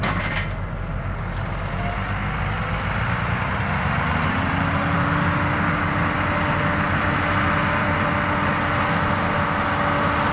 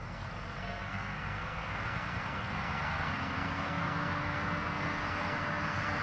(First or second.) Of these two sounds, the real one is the first